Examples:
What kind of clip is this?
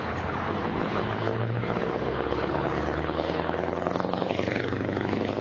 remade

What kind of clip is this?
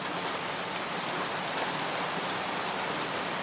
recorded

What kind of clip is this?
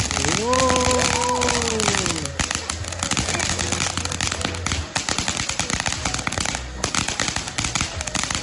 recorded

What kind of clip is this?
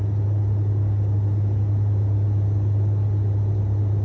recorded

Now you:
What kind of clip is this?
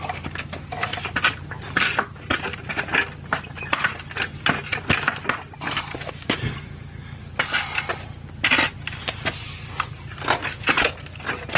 recorded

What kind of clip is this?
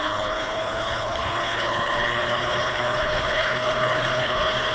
remade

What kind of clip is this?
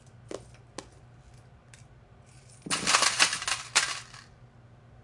recorded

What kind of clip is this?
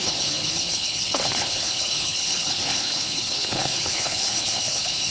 remade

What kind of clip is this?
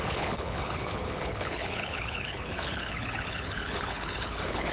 remade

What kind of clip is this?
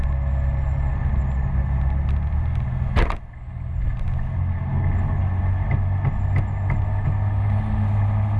recorded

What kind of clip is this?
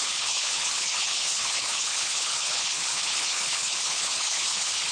remade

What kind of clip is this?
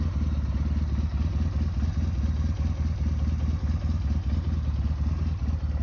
recorded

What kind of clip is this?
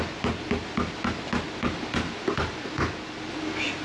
recorded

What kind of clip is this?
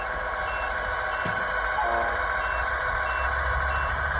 recorded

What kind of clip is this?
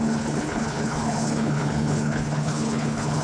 remade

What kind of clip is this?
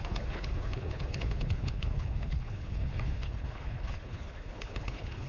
remade